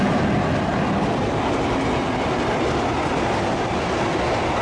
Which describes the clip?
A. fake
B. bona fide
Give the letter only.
B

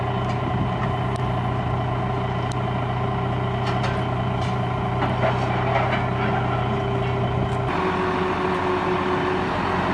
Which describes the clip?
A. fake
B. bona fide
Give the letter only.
B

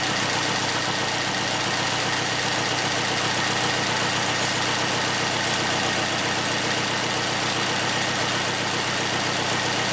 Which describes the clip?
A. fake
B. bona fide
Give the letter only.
B